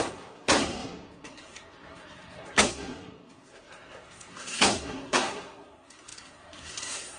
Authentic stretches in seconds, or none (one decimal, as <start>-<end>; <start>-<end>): none